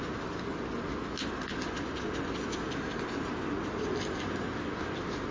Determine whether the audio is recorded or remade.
recorded